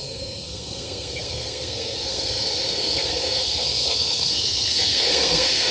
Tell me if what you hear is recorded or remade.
remade